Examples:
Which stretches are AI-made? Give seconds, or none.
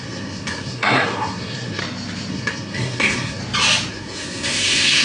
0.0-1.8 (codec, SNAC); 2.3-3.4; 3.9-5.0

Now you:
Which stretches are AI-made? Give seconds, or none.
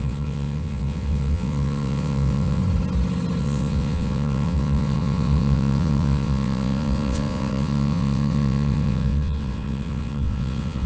0.0-2.6 (vocoder, WaveNeXt); 3.4-10.9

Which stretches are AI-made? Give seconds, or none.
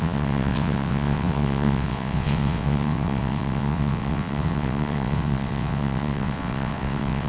0.0-7.3 (vocoder, WaveNeXt)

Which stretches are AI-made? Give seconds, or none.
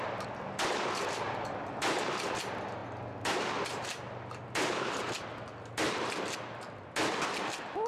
none